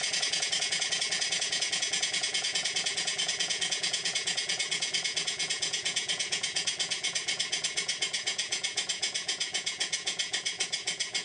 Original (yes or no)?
no